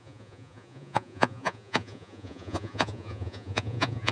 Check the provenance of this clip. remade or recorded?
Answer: remade